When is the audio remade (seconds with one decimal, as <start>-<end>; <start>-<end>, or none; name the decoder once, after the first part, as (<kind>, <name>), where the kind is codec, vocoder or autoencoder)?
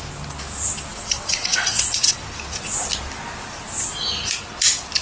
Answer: 0.9-2.2 (vocoder, WaveNeXt)